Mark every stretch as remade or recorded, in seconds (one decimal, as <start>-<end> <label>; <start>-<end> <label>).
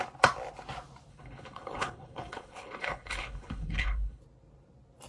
0.0-1.1 recorded; 1.1-4.2 remade; 4.2-5.1 recorded